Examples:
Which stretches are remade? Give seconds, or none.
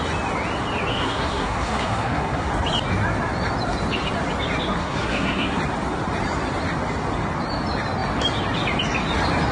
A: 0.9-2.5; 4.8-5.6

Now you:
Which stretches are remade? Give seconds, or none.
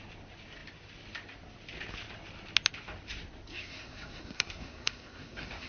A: 3.5-5.7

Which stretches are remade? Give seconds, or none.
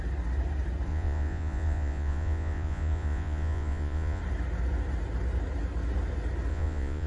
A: 0.9-4.2; 6.5-7.1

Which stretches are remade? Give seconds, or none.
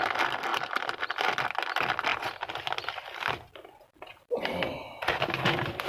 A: 0.5-1.0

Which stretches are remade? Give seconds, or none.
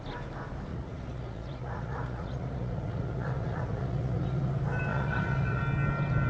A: 0.7-4.5; 4.9-5.6